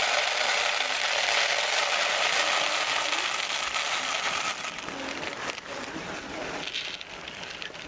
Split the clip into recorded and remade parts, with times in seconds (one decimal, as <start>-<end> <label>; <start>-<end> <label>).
0.0-7.9 recorded